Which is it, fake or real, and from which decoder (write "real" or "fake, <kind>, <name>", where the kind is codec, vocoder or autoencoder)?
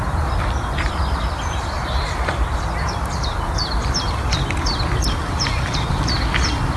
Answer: fake, vocoder, BigVGAN v2